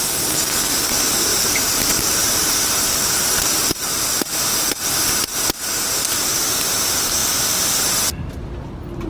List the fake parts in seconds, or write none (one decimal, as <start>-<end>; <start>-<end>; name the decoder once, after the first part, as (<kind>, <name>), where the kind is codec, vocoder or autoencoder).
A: 1.3-4.0 (vocoder, BigVGAN v2)